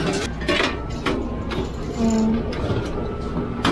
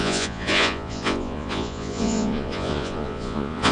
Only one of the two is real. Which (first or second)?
first